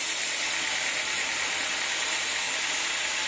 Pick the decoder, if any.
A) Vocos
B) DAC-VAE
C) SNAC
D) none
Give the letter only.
D